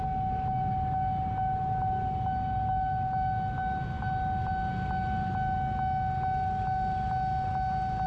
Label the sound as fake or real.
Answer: real